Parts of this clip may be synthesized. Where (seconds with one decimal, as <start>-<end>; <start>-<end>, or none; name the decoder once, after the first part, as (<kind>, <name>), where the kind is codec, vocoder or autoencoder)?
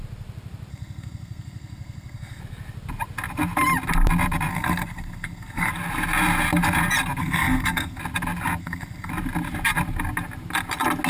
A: 0.7-2.4 (codec, SNAC); 4.5-5.7; 7.2-8.0; 8.6-9.1